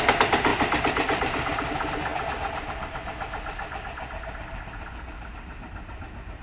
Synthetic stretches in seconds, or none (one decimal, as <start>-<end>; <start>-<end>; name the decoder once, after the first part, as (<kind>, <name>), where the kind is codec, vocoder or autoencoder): none